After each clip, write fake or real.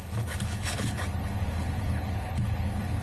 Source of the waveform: fake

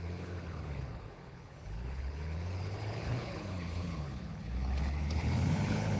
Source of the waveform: fake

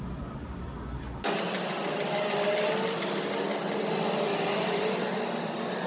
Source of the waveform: real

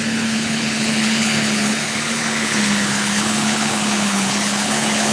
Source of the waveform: fake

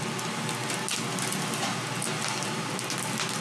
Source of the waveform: real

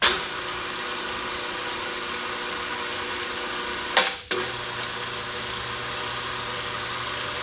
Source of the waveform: real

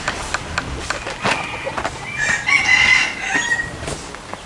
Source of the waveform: real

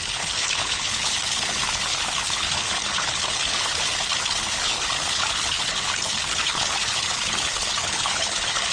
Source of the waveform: fake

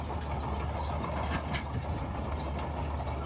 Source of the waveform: real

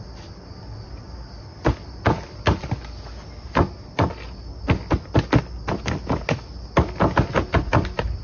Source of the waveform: real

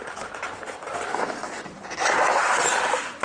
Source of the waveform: real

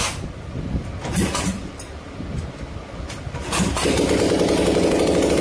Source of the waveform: real